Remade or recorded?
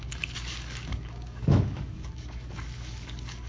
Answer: remade